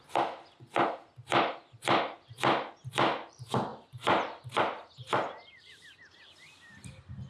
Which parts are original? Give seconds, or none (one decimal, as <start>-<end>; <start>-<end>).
0.0-7.3